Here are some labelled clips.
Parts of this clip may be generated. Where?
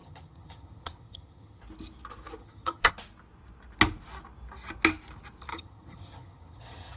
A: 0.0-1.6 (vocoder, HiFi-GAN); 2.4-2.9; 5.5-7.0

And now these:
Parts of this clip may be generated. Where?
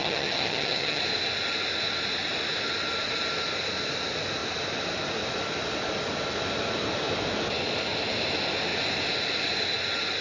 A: 0.0-1.0 (vocoder, HiFi-GAN)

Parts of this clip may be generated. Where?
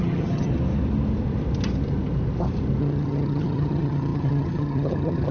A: 0.0-0.5 (vocoder, HiFi-GAN); 2.8-5.3